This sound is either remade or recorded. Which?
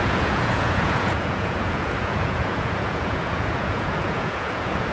remade